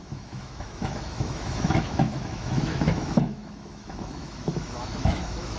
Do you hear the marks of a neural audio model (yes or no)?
yes